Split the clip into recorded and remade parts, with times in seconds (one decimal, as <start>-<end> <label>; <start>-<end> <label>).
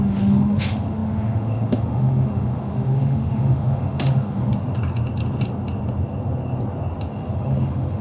0.0-4.5 remade; 4.5-7.1 recorded; 7.1-8.0 remade